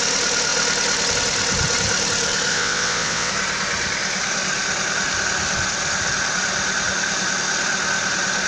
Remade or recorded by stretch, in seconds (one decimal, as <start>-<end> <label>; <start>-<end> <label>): 0.0-2.5 recorded; 2.5-3.3 remade; 3.3-8.5 recorded

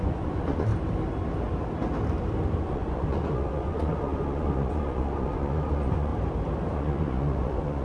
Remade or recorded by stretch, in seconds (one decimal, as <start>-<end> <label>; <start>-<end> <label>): 0.0-0.7 remade; 0.7-2.6 recorded; 2.6-6.1 remade; 6.1-6.7 recorded; 6.7-7.8 remade

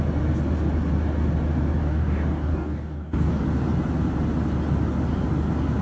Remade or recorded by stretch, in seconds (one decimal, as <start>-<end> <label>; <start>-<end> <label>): 0.0-1.8 recorded; 1.8-3.4 remade; 3.4-5.8 recorded

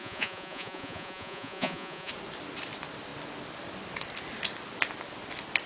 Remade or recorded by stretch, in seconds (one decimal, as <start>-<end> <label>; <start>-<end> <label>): 0.0-2.1 remade; 2.1-5.7 recorded

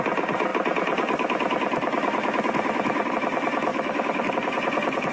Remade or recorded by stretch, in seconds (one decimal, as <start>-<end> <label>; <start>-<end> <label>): 0.0-3.7 recorded; 3.7-4.3 remade; 4.3-5.1 recorded

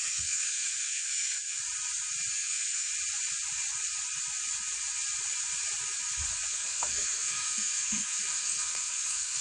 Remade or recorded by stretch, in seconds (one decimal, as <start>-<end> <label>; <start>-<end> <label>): 0.0-1.6 remade; 1.6-2.3 recorded; 2.3-2.9 remade; 2.9-6.5 recorded; 6.5-9.4 remade

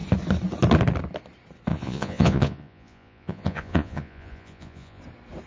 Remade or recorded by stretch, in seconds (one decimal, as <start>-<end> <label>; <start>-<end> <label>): 0.0-1.7 recorded; 1.7-5.0 remade; 5.0-5.5 recorded